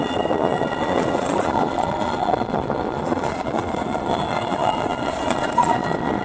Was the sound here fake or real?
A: fake